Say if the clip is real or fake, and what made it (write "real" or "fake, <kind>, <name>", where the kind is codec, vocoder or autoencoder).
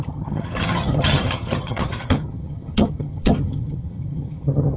fake, vocoder, HiFi-GAN